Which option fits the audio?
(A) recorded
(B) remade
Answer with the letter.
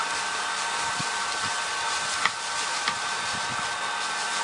B